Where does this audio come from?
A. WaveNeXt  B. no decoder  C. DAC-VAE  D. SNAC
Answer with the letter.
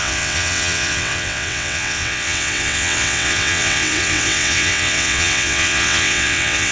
A